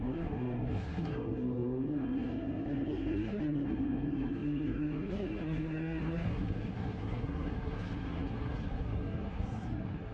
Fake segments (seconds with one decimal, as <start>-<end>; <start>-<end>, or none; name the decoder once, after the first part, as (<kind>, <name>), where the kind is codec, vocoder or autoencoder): 0.0-10.1 (codec, SNAC)